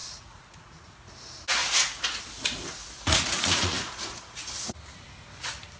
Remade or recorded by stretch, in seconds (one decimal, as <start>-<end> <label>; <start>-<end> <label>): 0.0-1.1 remade; 1.1-1.6 recorded; 1.6-2.2 remade; 2.2-2.8 recorded; 2.8-4.8 remade; 4.8-5.8 recorded